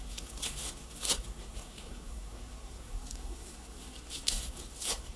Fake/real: fake